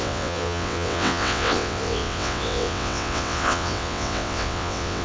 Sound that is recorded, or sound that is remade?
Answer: remade